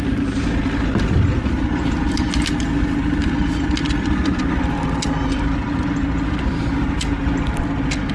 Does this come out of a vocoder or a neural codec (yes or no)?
no